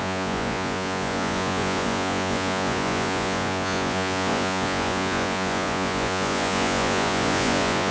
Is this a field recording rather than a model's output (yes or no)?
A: no